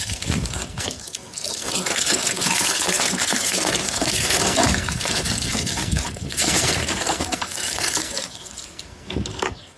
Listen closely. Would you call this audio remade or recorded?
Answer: remade